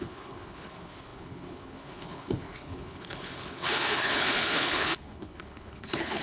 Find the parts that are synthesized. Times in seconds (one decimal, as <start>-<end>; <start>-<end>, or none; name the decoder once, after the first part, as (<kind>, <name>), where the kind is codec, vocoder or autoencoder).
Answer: 0.0-6.2 (codec, HILCodec)